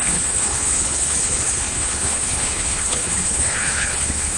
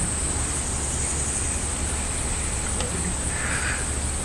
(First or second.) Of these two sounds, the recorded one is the second